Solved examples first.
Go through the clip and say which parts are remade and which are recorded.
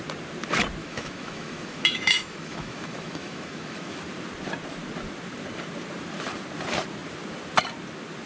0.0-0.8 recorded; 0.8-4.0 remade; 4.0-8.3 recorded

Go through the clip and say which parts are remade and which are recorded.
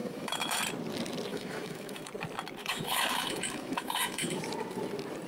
0.0-0.6 remade; 0.6-1.3 recorded; 1.3-2.1 remade; 2.1-2.6 recorded; 2.6-4.4 remade; 4.4-5.3 recorded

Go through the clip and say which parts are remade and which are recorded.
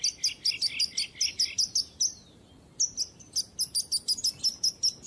0.0-5.1 recorded